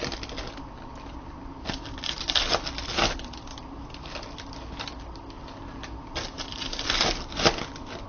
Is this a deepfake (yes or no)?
no